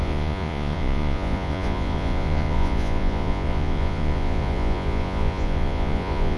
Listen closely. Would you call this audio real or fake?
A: fake